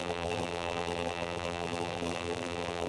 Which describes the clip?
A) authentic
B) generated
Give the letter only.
B